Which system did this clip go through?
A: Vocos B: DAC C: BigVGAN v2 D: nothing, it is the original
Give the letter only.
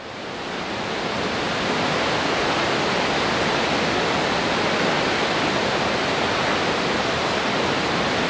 D